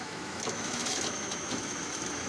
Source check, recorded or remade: remade